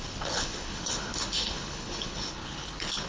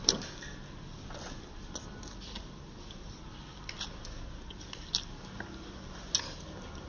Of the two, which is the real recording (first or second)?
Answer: second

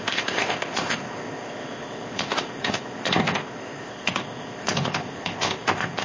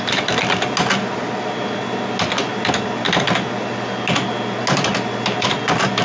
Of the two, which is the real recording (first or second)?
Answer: second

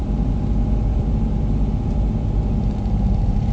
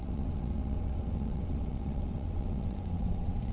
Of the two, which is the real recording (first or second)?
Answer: first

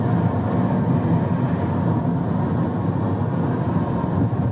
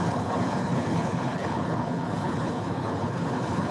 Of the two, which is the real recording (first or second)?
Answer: first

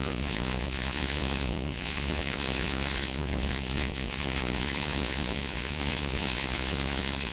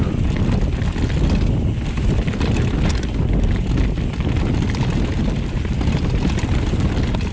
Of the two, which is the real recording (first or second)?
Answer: second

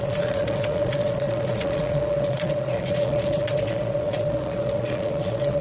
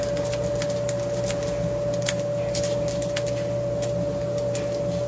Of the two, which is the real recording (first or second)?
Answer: second